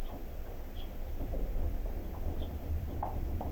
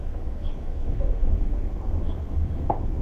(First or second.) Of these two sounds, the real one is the first